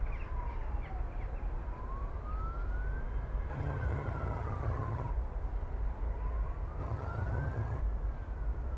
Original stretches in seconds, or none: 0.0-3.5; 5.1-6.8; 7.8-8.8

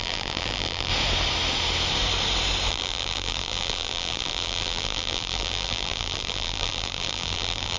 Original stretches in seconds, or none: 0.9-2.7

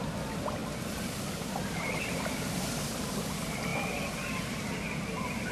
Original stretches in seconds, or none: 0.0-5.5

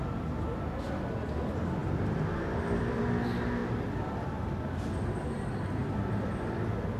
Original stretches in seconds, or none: 0.0-1.8; 3.0-3.6; 4.3-5.8; 6.6-7.0

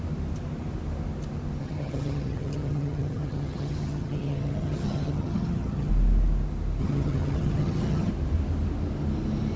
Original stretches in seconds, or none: 0.0-1.6; 5.9-6.8; 8.1-9.6

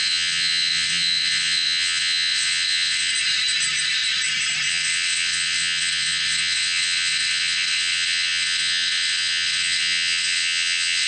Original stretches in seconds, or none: 3.1-4.7

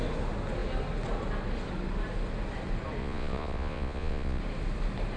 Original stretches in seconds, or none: 0.0-3.0; 4.4-5.2

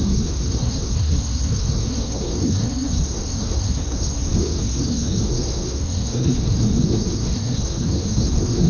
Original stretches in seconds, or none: none